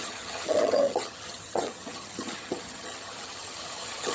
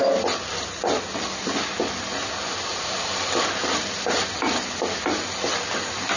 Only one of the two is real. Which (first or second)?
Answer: second